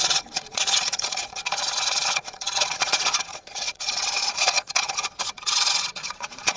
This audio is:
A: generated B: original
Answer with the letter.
A